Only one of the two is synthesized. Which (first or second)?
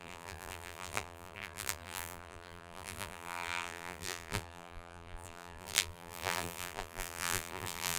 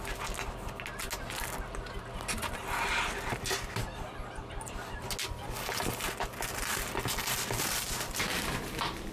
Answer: first